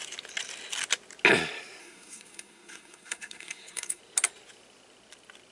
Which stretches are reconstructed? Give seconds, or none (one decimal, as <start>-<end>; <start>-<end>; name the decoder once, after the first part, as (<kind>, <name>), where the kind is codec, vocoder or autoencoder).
1.8-4.0 (codec, SNAC)